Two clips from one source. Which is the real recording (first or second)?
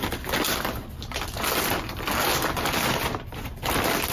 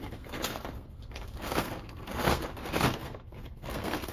first